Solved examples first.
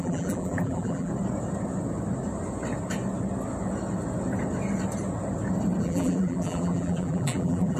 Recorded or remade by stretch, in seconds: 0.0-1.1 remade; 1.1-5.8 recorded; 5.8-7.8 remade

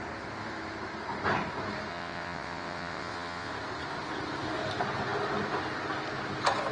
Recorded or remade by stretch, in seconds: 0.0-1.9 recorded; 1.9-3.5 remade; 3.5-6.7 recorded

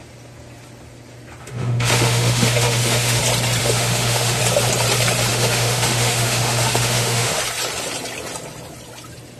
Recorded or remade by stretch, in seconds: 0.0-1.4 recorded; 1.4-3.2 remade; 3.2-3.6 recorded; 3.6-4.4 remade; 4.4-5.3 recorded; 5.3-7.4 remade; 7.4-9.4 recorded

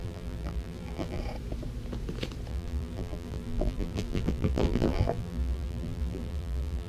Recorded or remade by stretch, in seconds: 0.0-1.2 remade; 1.2-2.5 recorded; 2.5-6.9 remade

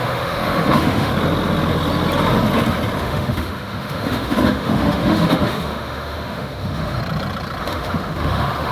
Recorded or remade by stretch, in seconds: 0.0-1.1 remade; 1.1-3.0 recorded; 3.0-7.0 remade; 7.0-7.6 recorded; 7.6-8.7 remade

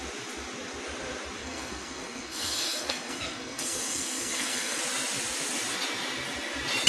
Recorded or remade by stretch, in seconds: 0.0-1.4 recorded; 1.4-4.8 remade; 4.8-6.9 recorded

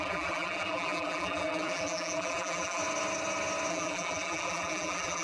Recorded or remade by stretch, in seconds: 0.0-2.8 remade; 2.8-3.7 recorded; 3.7-5.2 remade